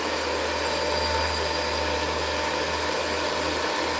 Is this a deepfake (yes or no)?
no